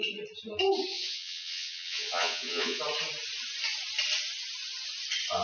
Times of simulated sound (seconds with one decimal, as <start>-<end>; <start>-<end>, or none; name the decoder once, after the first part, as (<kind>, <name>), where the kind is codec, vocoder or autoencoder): 0.9-2.8 (vocoder, Vocos)